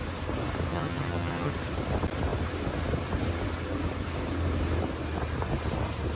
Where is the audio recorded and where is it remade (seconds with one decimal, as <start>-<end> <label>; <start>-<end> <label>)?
0.0-0.7 recorded; 0.7-1.5 remade; 1.5-6.2 recorded